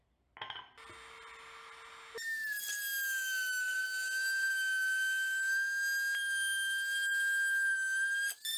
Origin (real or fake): real